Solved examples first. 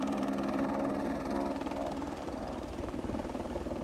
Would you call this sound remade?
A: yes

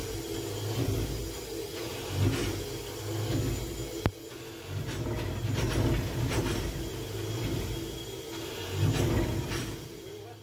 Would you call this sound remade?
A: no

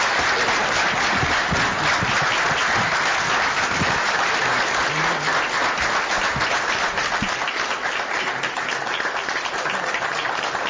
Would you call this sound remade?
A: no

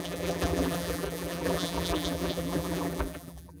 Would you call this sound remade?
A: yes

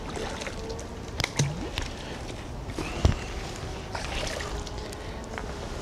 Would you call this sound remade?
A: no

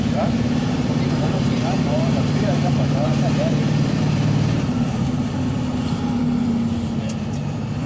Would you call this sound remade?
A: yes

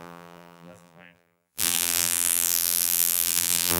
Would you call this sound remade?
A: yes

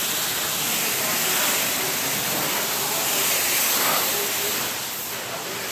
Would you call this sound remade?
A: no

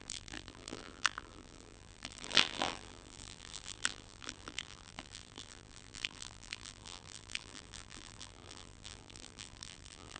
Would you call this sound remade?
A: yes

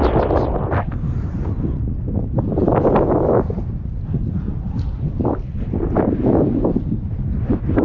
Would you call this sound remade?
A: no